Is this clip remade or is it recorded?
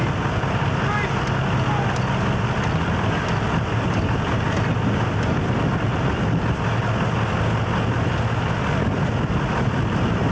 recorded